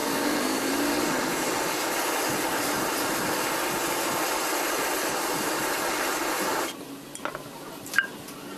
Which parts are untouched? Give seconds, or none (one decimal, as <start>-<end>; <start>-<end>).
0.7-8.6